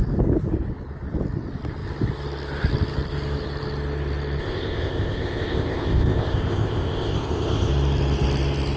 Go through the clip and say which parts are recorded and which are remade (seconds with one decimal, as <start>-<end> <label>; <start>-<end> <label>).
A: 0.0-4.4 recorded; 4.4-7.7 remade; 7.7-8.8 recorded